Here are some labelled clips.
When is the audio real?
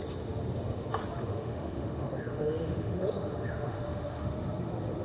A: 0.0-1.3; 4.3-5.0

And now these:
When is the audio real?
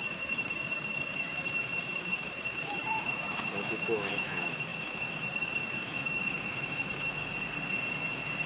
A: 7.2-8.5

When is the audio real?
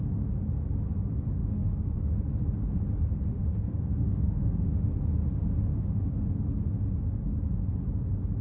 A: 0.0-1.4; 2.0-3.3; 4.9-5.7; 6.2-8.4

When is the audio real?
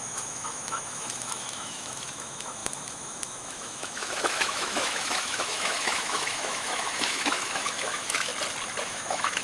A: 8.3-8.8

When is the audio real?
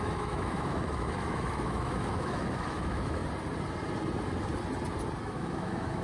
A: 3.2-5.2